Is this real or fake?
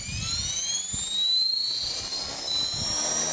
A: real